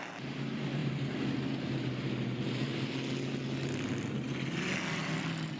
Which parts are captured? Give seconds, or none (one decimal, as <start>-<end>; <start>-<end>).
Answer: 0.0-5.6

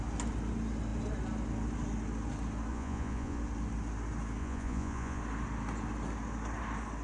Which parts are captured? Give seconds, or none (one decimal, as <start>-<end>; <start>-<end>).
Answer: 0.0-2.7; 3.4-4.4; 5.2-7.0

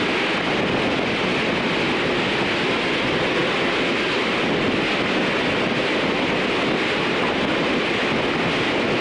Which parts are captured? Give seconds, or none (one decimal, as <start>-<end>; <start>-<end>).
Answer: 0.0-9.0

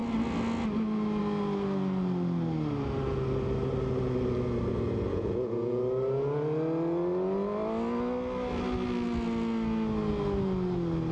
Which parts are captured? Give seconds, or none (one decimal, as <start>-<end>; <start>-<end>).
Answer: 0.0-5.1; 5.8-11.1

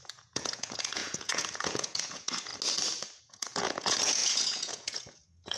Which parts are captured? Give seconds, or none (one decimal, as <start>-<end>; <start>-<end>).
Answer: 2.5-3.2

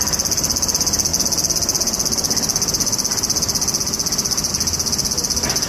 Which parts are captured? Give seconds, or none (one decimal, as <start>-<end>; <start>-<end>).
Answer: 0.0-5.7

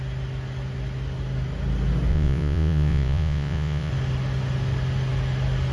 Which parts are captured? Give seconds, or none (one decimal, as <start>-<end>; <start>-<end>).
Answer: 0.0-2.1; 3.9-5.7